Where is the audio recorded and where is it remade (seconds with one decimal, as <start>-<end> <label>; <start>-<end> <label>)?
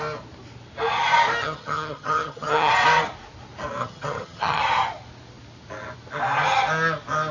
0.0-1.4 recorded; 1.4-2.7 remade; 2.7-3.8 recorded; 3.8-4.6 remade; 4.6-7.3 recorded